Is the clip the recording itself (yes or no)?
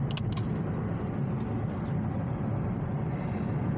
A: yes